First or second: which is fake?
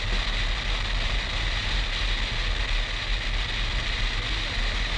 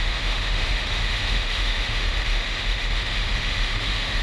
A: second